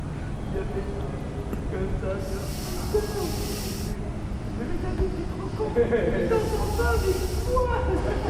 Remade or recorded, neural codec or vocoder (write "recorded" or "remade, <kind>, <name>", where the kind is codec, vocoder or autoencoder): recorded